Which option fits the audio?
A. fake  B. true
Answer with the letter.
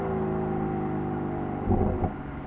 B